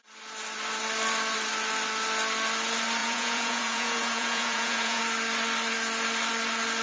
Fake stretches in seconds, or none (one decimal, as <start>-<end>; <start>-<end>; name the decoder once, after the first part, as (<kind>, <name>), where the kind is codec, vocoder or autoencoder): 3.0-5.0 (vocoder, Vocos)